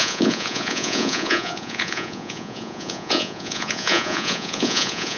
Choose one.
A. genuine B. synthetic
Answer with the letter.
B